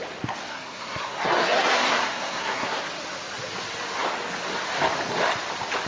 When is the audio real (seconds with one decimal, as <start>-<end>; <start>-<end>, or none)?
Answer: 0.0-0.5; 2.8-5.9